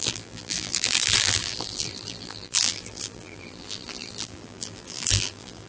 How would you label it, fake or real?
fake